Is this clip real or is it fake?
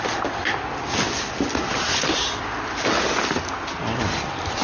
real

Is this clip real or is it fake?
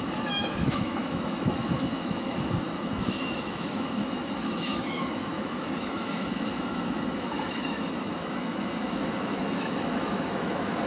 fake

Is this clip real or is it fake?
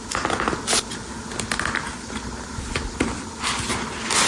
real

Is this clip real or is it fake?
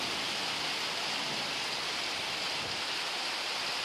real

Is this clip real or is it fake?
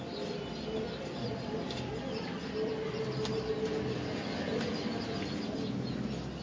real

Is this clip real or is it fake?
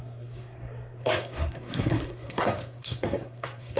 fake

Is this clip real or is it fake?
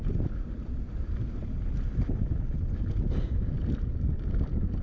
real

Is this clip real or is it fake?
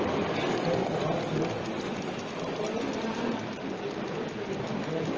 real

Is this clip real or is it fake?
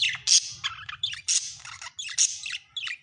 real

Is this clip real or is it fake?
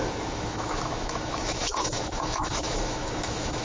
fake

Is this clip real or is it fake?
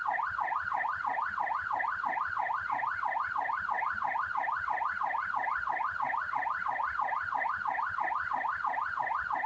real